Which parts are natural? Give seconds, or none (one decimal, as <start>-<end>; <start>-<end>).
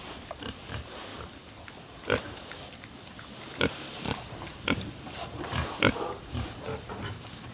1.1-4.8; 5.6-6.9